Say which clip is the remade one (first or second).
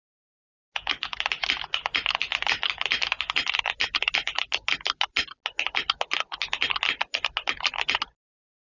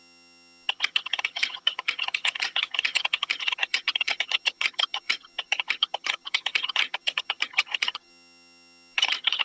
second